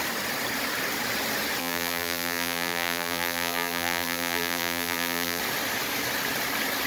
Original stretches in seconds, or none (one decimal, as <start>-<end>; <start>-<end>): 0.0-1.6; 5.4-6.9